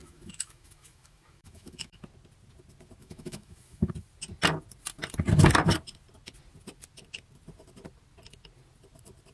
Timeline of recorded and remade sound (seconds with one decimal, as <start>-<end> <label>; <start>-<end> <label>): 0.0-2.0 remade; 2.0-3.0 recorded; 3.0-3.9 remade; 3.9-9.3 recorded